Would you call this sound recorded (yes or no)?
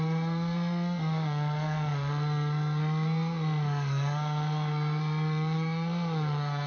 no